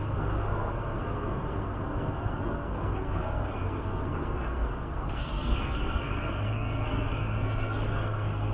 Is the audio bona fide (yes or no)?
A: no